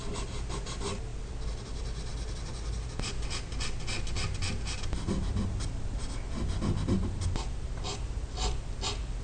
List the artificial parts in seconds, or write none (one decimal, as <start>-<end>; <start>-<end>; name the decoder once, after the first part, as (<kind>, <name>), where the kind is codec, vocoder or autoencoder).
none